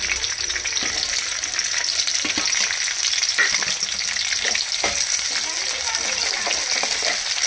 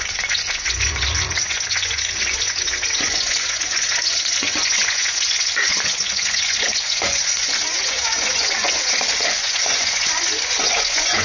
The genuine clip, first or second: first